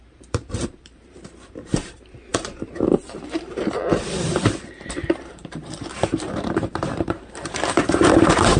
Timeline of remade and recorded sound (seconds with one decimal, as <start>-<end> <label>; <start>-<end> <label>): 0.0-8.6 remade